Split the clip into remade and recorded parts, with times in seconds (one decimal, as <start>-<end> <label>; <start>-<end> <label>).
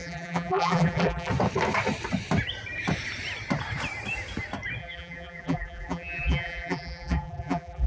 0.0-1.3 remade; 1.3-4.8 recorded; 4.8-7.9 remade